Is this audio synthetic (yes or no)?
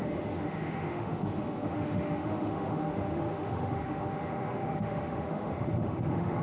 yes